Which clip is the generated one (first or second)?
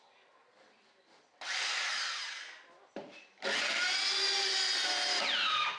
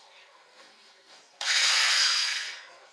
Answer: second